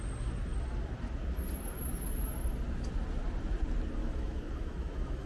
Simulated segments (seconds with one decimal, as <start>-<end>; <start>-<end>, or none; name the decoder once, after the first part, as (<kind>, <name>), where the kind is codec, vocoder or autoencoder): 4.0-5.3 (autoencoder, DAC-VAE)